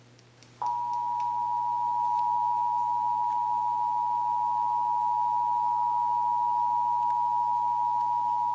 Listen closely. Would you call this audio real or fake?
real